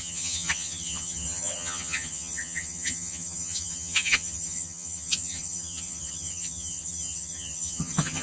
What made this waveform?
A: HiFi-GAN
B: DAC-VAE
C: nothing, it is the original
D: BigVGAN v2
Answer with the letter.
A